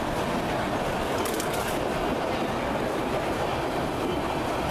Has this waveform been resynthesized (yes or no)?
no